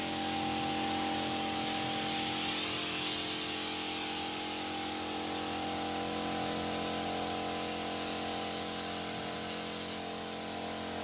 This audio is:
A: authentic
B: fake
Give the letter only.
A